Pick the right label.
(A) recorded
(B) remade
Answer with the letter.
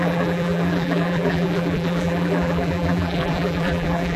B